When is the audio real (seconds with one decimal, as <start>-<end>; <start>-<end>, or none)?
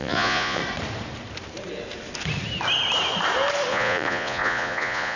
0.6-3.7